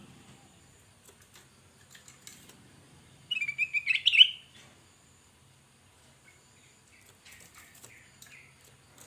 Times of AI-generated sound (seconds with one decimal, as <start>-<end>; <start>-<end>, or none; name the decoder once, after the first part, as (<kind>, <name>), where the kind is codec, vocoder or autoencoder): 0.0-0.6 (vocoder, BigVGAN v2); 2.3-5.6